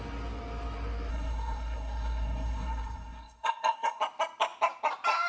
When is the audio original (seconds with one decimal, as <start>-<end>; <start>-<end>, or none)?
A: 0.0-1.1; 4.0-5.3